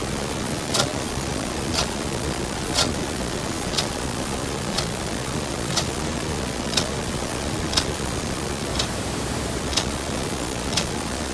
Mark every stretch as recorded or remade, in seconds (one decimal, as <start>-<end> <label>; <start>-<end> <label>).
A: 0.0-8.7 remade; 8.7-9.6 recorded; 9.6-11.3 remade